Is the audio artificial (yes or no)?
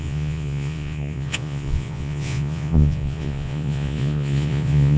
yes